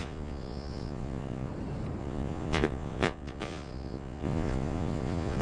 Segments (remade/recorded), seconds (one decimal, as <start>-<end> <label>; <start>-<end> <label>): 0.0-1.5 remade; 1.5-2.0 recorded; 2.0-5.4 remade